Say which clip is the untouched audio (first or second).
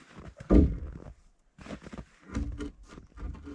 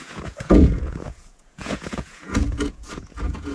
first